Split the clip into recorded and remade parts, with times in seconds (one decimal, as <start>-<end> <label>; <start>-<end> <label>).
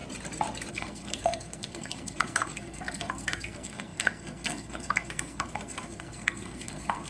0.0-0.7 recorded; 0.7-7.1 remade